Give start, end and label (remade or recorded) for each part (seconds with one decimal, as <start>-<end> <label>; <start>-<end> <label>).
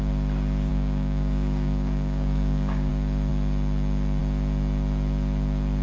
0.0-0.7 recorded; 0.7-2.9 remade; 2.9-5.8 recorded